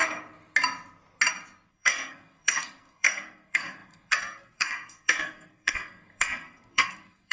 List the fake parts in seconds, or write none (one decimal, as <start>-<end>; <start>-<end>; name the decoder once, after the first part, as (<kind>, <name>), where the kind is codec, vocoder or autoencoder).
1.7-7.3 (codec, SNAC)